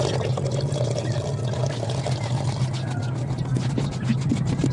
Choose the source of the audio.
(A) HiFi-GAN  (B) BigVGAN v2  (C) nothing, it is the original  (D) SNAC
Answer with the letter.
C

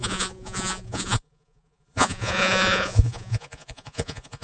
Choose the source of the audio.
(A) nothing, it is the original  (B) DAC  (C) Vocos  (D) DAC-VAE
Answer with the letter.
C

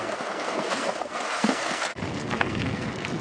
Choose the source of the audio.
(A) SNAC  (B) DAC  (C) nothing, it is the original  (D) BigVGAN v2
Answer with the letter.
A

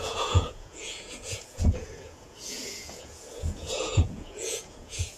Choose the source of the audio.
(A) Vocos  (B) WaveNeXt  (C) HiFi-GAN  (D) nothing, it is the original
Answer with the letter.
A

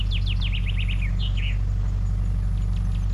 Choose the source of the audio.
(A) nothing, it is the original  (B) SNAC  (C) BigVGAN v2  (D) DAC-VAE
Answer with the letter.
A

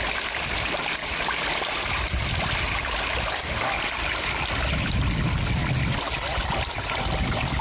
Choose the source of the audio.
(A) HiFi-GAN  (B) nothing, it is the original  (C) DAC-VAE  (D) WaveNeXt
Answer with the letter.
B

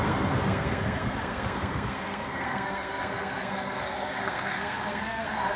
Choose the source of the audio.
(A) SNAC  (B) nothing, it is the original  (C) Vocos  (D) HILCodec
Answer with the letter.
A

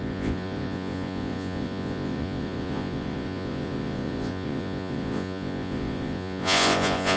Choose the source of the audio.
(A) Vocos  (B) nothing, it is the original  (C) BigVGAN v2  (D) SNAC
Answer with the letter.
A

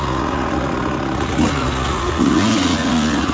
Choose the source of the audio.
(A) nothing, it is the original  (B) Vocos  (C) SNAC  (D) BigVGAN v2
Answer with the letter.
B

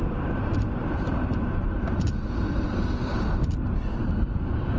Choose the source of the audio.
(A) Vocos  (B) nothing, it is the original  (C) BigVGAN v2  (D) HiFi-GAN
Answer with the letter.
C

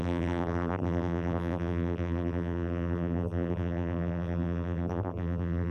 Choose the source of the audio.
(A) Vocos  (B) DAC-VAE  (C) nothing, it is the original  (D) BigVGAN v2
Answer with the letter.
D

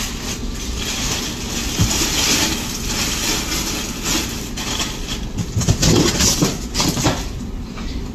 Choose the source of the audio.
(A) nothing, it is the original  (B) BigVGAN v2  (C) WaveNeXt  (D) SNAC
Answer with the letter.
A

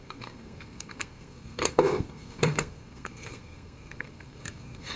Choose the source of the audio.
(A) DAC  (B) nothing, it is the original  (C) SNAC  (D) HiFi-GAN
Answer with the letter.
C